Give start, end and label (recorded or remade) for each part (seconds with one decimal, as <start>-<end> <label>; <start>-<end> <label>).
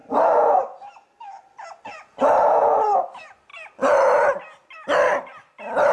0.0-5.9 recorded